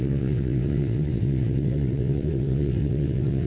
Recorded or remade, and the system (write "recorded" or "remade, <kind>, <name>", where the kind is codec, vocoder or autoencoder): remade, vocoder, WaveNeXt